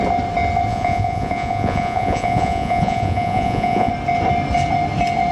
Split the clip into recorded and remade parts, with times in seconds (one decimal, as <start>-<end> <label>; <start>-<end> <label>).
0.0-0.7 recorded; 0.7-3.9 remade; 3.9-5.3 recorded